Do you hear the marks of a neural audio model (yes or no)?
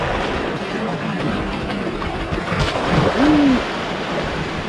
no